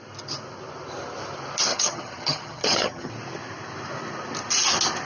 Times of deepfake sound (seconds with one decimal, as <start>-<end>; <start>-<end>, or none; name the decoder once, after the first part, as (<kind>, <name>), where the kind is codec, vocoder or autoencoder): 1.7-3.1 (vocoder, HiFi-GAN)